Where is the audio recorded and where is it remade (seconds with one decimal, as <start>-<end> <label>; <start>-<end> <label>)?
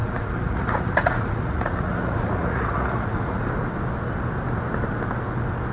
0.0-3.4 remade; 3.4-5.7 recorded